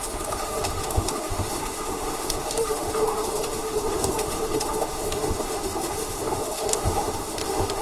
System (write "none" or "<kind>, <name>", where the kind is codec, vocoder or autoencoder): autoencoder, DAC-VAE